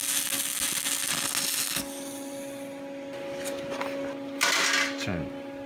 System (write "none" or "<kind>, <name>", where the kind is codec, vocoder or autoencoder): none